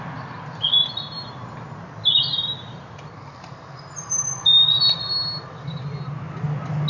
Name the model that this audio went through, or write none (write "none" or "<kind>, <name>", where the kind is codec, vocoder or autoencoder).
none